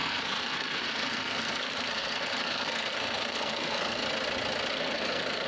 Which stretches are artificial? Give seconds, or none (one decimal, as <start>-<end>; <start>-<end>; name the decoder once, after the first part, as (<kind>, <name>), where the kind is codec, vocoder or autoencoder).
0.0-4.0 (codec, SNAC); 4.7-5.5